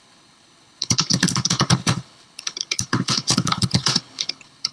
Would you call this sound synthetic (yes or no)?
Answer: yes